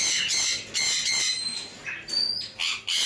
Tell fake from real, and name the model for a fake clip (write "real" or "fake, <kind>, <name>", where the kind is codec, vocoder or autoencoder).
real